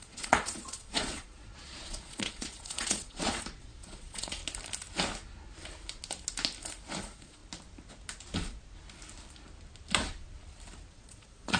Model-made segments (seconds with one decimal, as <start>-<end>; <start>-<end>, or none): 0.0-4.4; 7.0-7.4; 10.9-11.6